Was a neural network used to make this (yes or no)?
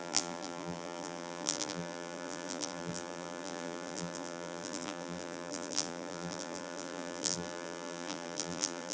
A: yes